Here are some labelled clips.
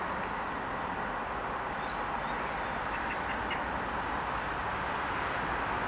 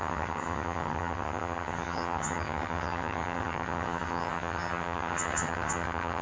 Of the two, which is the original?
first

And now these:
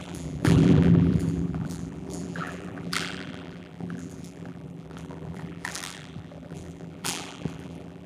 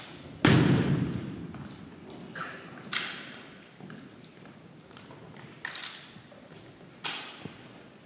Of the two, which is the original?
second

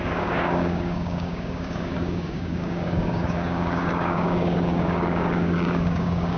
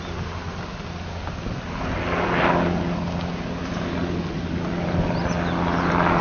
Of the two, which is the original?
second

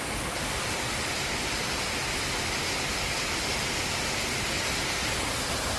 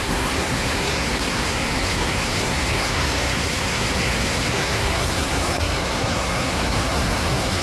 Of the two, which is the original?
first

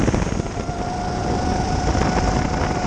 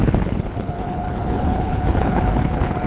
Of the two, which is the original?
first